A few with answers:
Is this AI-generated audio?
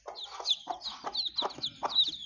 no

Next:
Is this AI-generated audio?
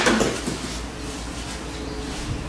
no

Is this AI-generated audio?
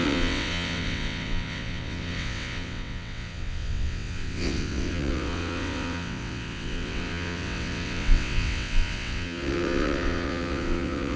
yes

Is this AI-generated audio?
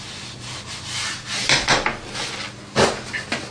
no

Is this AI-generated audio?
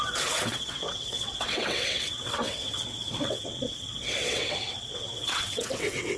yes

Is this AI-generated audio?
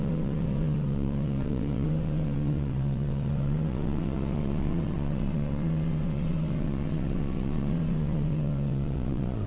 yes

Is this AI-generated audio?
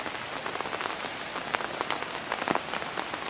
no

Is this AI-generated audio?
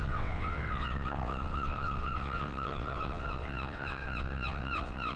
yes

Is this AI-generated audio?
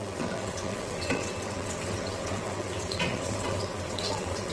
yes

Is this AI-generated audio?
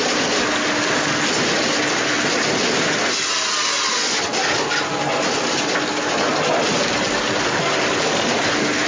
no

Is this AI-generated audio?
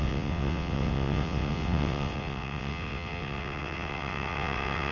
yes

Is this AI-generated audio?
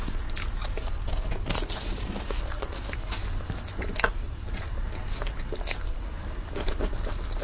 no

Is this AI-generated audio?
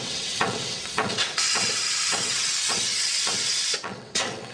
yes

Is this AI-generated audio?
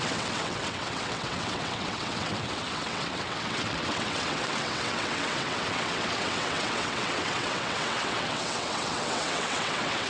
yes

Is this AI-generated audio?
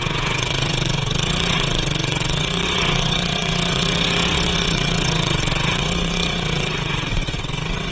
yes